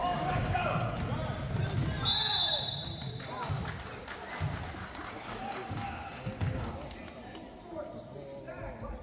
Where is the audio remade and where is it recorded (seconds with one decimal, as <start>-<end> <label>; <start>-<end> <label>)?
0.0-1.0 remade; 1.0-4.8 recorded; 4.8-6.7 remade; 6.7-9.0 recorded